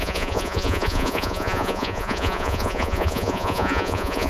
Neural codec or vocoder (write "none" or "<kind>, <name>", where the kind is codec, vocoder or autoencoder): vocoder, Vocos